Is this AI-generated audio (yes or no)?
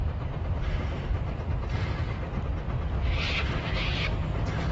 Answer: no